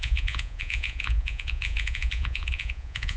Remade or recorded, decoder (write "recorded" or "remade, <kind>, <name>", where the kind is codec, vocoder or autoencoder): remade, vocoder, Vocos